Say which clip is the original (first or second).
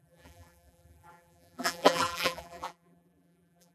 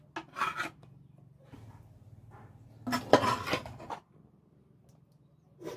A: second